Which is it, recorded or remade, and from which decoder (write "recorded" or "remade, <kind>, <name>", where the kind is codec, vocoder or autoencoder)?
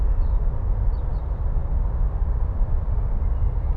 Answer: recorded